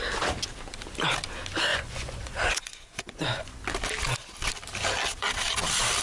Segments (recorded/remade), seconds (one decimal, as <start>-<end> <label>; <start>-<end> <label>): 0.0-1.7 recorded; 1.7-3.6 remade; 3.6-6.0 recorded

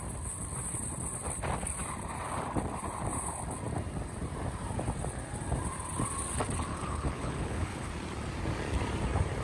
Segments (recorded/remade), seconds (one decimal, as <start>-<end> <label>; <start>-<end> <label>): 0.0-6.7 recorded; 6.7-7.9 remade; 7.9-9.4 recorded

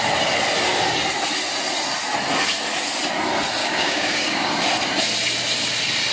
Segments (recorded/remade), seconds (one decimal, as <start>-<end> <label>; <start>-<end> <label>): 0.0-3.6 recorded; 3.6-4.5 remade; 4.5-6.1 recorded

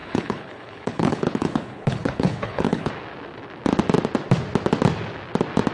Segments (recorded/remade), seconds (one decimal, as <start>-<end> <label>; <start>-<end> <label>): 0.0-2.9 remade; 2.9-5.7 recorded

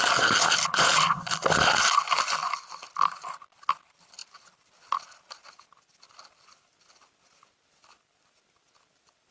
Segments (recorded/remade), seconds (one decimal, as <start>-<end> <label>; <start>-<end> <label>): 0.0-9.3 recorded

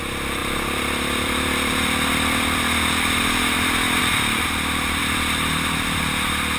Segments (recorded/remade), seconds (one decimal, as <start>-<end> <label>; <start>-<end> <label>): 0.0-0.4 recorded; 0.4-4.0 remade; 4.0-5.0 recorded; 5.0-6.0 remade; 6.0-6.6 recorded